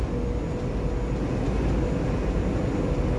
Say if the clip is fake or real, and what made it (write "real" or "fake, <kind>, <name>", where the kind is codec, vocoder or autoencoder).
real